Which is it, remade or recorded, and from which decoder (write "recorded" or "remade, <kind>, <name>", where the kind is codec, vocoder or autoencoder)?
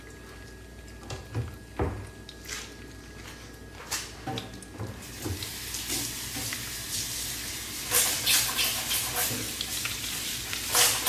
recorded